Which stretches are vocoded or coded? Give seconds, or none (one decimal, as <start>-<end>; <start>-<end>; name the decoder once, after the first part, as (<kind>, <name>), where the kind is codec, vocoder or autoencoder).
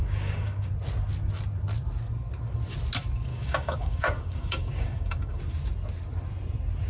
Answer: 0.0-0.7 (codec, DAC); 3.3-5.4